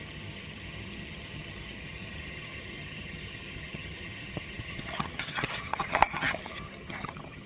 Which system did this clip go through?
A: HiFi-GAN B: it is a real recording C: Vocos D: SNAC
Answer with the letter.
A